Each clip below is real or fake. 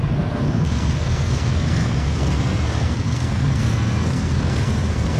fake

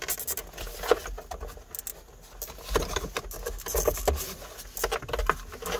real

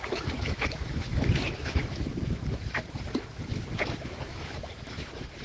fake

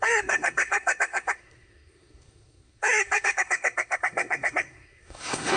fake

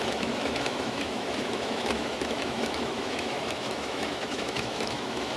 fake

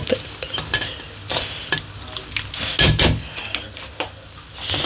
real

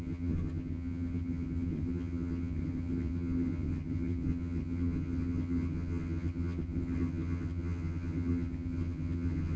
fake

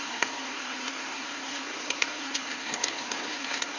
fake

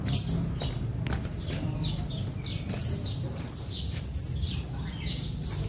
real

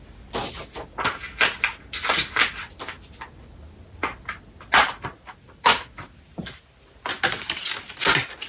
real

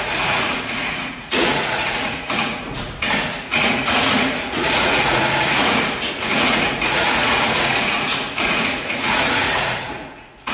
fake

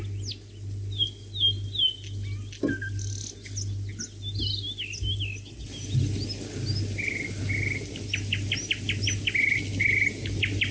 real